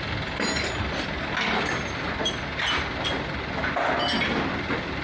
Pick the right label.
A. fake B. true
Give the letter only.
B